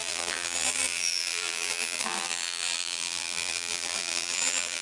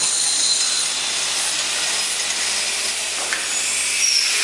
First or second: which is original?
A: second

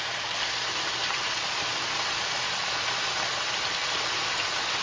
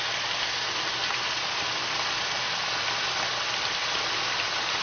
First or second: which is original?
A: second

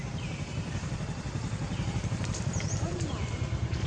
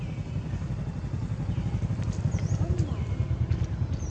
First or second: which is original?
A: second